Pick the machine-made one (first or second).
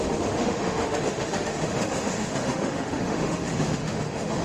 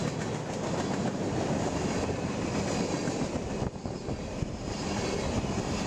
first